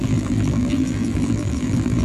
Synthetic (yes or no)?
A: yes